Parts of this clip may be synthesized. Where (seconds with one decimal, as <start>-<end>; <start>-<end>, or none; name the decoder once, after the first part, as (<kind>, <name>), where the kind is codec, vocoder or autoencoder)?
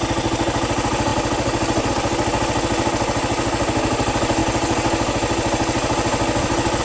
none